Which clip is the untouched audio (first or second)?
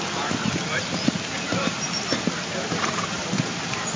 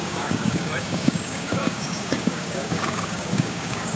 first